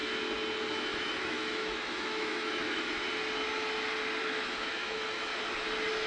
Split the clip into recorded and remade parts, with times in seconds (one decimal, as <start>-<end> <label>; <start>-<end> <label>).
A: 0.0-0.7 recorded; 0.7-3.0 remade; 3.0-4.2 recorded; 4.2-5.3 remade; 5.3-6.1 recorded